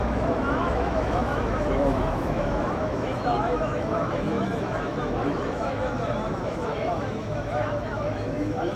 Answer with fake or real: fake